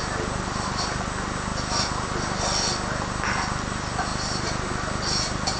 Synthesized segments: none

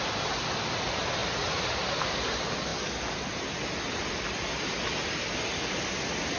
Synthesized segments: none

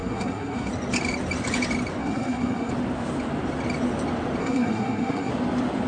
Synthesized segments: 0.0-0.7 (codec, SNAC); 2.0-2.7; 4.4-5.3